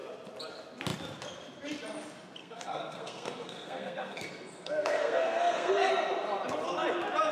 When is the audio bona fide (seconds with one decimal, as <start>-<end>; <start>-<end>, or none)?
0.0-2.4; 5.9-7.3